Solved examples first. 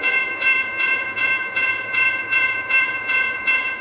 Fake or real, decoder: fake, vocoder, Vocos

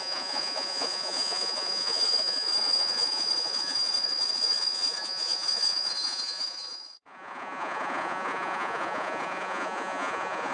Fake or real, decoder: fake, vocoder, Vocos